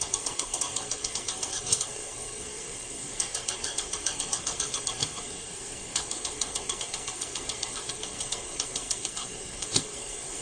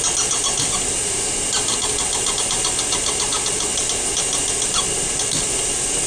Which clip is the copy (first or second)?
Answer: first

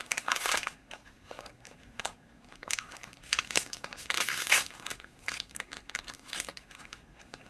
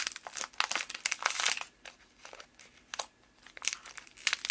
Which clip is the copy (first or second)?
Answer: first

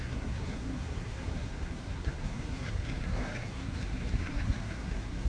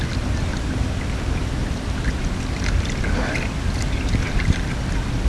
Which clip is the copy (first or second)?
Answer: first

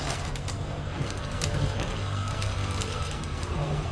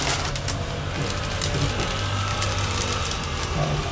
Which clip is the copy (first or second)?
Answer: first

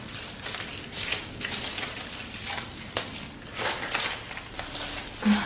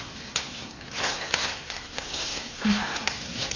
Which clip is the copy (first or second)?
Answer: second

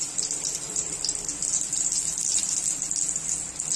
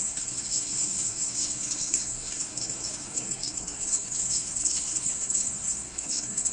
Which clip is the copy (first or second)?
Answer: second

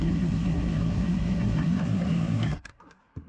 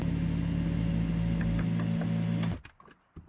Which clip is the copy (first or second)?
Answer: first